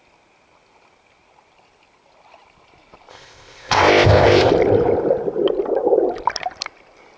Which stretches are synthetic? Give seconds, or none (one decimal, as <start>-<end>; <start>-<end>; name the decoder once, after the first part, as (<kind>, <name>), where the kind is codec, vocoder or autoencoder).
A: 3.1-4.5 (codec, ZipCodec)